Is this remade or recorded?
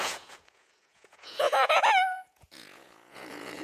remade